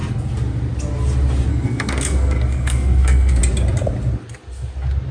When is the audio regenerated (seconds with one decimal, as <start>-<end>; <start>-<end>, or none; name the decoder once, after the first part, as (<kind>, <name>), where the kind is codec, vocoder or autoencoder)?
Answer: 1.5-3.4 (codec, SNAC)

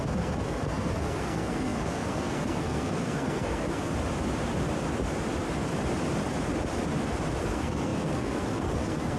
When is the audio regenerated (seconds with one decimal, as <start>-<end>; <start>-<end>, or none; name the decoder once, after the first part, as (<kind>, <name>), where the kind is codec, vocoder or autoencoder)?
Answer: 0.0-3.9 (codec, SNAC); 7.4-9.2

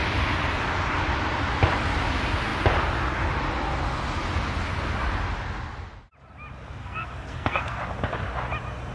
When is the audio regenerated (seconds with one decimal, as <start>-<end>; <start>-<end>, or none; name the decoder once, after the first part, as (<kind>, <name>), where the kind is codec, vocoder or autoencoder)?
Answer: 6.8-7.8 (codec, SNAC)

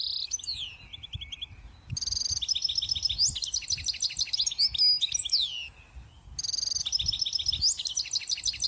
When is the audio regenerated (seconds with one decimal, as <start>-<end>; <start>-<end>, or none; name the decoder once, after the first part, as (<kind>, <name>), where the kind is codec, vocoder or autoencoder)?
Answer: none

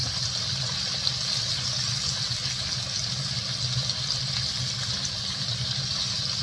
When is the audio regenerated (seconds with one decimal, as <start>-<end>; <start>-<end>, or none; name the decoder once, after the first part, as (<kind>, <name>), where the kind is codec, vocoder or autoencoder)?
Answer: none

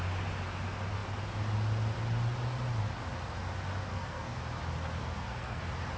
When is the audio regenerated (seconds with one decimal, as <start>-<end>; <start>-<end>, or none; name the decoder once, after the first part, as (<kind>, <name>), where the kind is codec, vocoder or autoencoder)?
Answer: 3.9-4.4 (codec, SNAC); 5.0-5.6